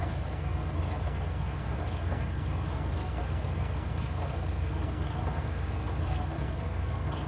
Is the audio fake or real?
fake